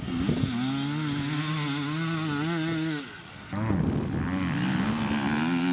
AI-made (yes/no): no